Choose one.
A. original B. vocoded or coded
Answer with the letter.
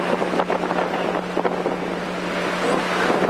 A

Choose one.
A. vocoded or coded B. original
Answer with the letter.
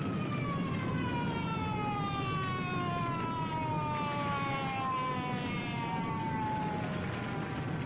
B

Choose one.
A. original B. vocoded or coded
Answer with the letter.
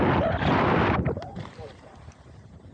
B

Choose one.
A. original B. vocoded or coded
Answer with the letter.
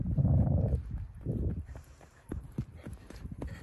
B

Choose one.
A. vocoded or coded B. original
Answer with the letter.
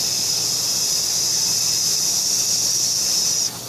B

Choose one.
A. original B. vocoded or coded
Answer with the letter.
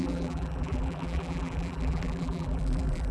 B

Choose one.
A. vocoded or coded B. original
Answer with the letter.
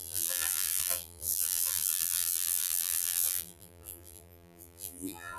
A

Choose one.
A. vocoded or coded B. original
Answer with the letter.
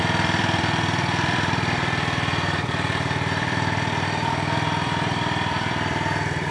A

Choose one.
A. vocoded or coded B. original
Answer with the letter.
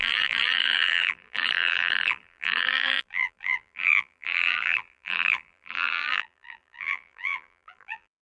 A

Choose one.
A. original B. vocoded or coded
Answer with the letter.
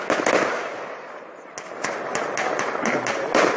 A